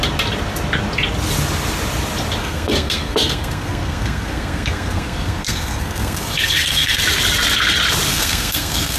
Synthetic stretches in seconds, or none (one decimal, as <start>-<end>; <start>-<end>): 2.4-7.0; 8.1-9.0